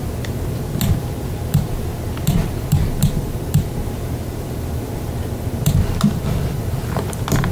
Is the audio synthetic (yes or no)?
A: yes